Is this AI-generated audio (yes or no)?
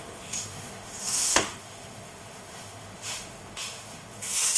yes